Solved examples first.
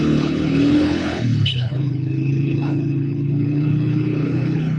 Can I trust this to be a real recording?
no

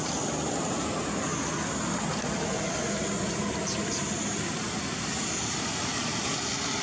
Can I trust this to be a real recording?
yes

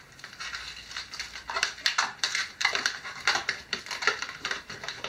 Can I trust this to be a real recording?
no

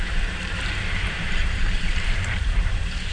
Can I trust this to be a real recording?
no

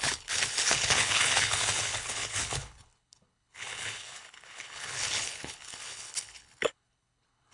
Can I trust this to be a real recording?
no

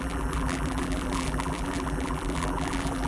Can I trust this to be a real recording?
no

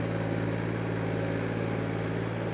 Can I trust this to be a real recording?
yes